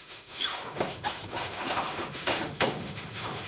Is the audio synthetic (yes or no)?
yes